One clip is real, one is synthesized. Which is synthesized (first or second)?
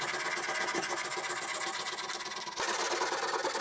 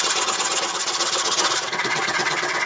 second